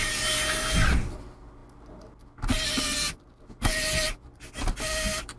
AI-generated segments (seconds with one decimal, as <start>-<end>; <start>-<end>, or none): none